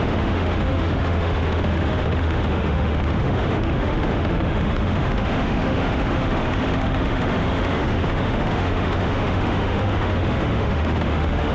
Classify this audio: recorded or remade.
remade